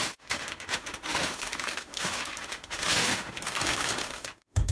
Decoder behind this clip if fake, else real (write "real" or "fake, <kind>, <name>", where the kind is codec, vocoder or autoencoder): fake, autoencoder, DAC-VAE